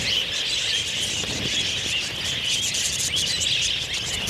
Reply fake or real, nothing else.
real